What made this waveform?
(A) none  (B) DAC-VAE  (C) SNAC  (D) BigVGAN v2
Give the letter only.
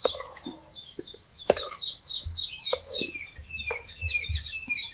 B